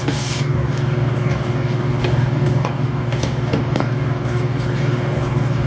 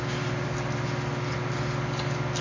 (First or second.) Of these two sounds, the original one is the second